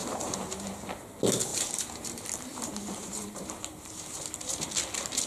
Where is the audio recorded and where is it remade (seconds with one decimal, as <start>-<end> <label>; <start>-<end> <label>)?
0.0-0.9 remade; 0.9-1.5 recorded; 1.5-4.7 remade; 4.7-5.3 recorded